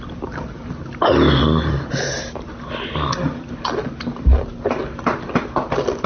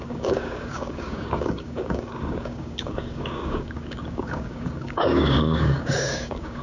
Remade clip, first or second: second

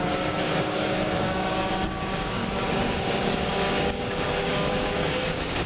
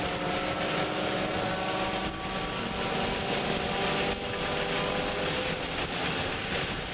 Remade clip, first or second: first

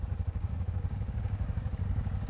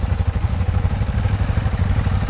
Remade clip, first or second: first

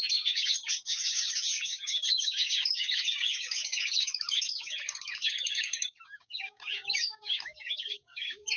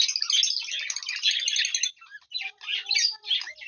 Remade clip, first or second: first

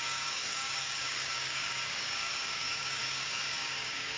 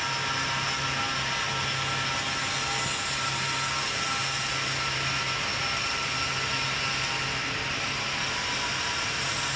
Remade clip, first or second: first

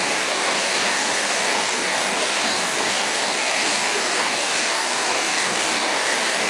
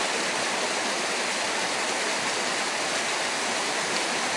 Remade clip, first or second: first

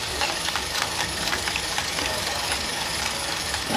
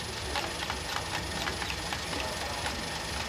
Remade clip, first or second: first